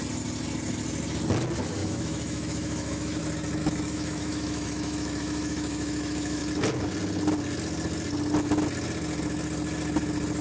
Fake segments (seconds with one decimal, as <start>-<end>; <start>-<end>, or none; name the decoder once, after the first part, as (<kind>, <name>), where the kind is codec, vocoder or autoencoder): 1.8-3.2 (autoencoder, DAC-VAE); 3.6-6.4